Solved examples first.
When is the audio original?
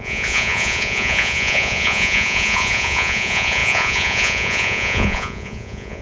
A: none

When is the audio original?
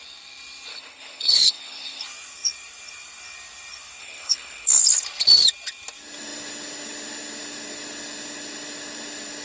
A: 0.0-0.7; 2.0-4.0; 4.8-9.4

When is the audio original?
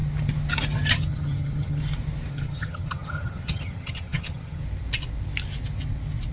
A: 0.0-0.9; 1.8-2.3; 4.6-6.3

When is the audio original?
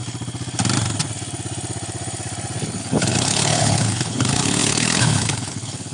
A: 0.0-2.8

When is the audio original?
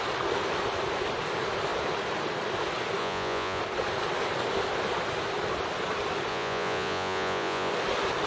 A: 0.0-3.0; 3.6-6.3; 7.7-8.3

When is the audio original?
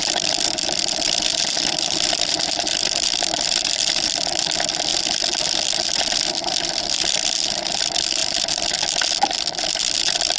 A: 4.9-5.7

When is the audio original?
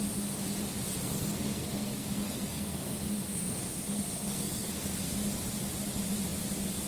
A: 0.0-1.0; 5.1-6.9